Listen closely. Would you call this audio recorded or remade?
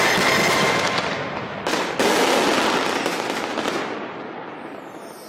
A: recorded